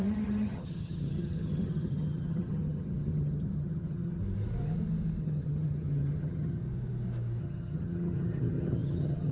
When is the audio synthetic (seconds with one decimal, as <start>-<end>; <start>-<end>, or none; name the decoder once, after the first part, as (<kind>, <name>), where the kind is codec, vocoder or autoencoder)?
0.0-4.2 (vocoder, HiFi-GAN); 5.2-6.6; 7.4-9.3